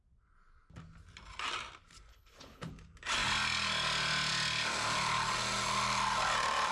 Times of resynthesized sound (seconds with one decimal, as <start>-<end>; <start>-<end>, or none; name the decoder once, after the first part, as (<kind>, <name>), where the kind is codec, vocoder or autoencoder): 2.1-2.7 (codec, HILCodec)